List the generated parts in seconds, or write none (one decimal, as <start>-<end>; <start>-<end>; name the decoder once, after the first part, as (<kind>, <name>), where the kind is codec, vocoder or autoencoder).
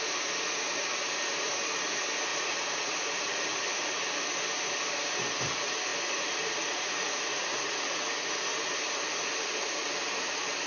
2.3-3.2 (vocoder, Vocos); 5.9-8.4